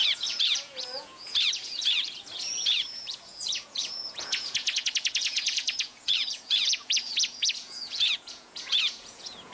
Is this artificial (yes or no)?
yes